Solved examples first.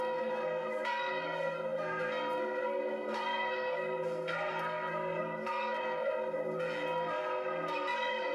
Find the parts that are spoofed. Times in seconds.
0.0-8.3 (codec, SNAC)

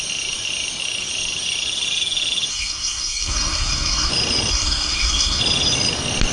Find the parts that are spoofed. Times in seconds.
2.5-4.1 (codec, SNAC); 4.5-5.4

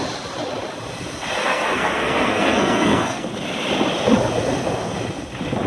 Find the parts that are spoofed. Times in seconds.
1.5-3.3 (codec, SNAC)

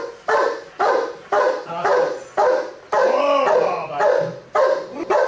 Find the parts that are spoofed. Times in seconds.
none

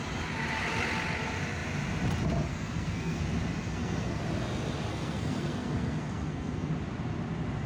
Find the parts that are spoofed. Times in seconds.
2.5-3.2 (codec, SNAC); 3.6-4.2; 4.9-6.7

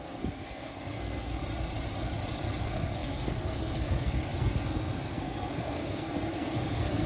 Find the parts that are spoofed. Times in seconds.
0.0-1.4 (codec, SNAC); 2.6-7.1

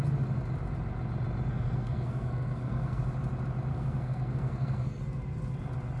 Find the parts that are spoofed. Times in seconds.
1.5-3.0 (codec, SNAC); 3.7-5.0

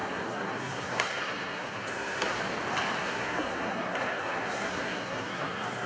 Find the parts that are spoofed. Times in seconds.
0.0-2.4 (codec, SNAC); 3.0-5.9